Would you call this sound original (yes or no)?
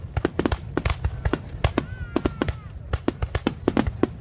yes